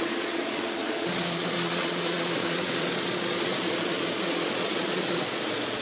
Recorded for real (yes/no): no